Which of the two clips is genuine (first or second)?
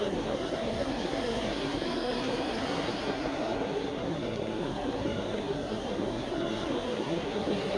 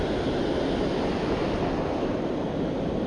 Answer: second